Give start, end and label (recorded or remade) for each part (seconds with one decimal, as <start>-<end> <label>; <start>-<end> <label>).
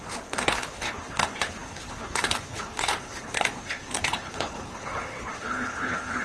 0.0-6.2 remade